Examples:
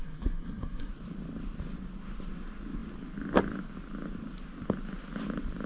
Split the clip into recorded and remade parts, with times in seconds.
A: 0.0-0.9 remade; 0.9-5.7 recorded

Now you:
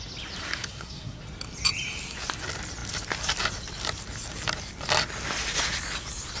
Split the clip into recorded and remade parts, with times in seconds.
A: 0.0-0.4 recorded; 0.4-1.2 remade; 1.2-6.4 recorded

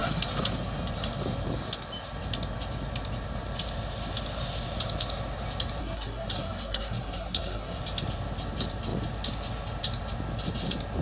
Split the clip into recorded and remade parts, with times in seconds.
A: 0.0-5.8 recorded; 5.8-7.8 remade; 7.8-11.0 recorded

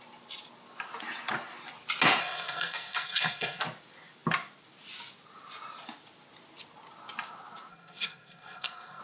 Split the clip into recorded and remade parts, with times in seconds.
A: 0.0-2.2 recorded; 2.2-3.6 remade; 3.6-7.7 recorded; 7.7-9.0 remade

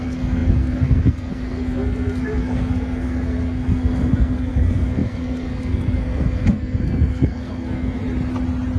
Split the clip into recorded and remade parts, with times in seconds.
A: 0.0-8.0 remade; 8.0-8.8 recorded